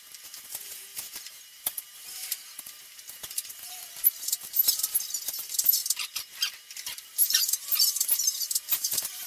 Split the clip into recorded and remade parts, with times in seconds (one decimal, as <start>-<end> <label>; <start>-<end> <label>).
0.0-5.8 remade; 5.8-6.7 recorded; 6.7-9.3 remade